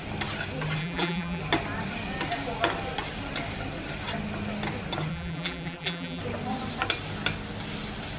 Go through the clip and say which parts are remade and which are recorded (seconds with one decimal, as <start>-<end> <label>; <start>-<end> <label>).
0.0-0.8 recorded; 0.8-1.4 remade; 1.4-5.1 recorded; 5.1-6.2 remade; 6.2-8.2 recorded